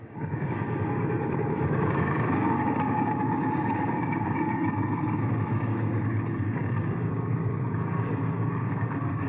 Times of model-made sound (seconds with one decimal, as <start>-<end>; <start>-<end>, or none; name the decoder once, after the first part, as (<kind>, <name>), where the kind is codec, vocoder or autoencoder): 0.0-9.3 (codec, DAC)